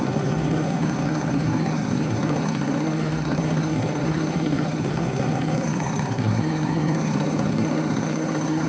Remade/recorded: remade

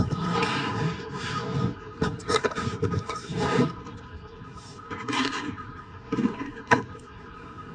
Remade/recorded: remade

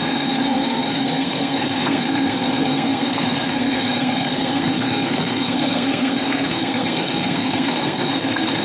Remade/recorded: remade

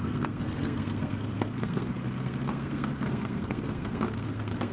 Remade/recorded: remade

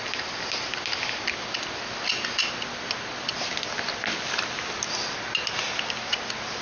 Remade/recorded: recorded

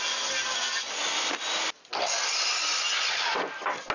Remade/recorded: recorded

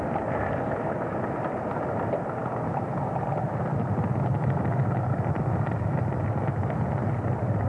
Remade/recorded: recorded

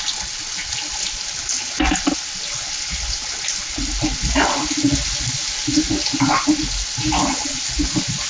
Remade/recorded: recorded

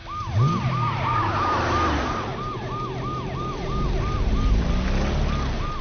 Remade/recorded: recorded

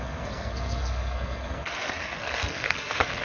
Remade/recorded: remade